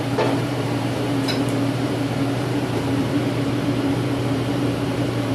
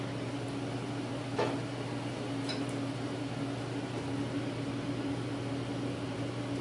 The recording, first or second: second